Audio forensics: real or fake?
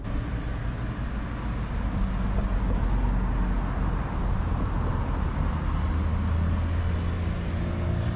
real